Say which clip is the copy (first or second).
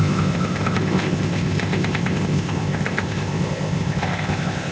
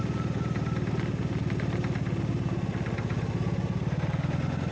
first